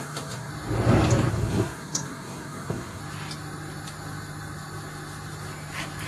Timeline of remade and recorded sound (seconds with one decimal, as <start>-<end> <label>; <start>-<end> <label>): 0.0-0.5 remade; 0.5-1.3 recorded; 1.3-3.0 remade; 3.0-6.1 recorded